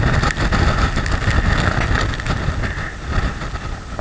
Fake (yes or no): no